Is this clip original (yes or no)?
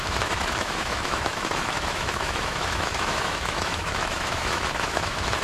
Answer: no